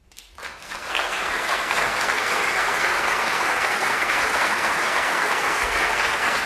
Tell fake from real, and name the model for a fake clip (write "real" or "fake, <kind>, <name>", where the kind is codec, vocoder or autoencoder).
fake, codec, SNAC